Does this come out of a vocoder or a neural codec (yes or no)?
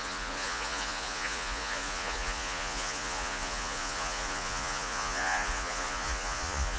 yes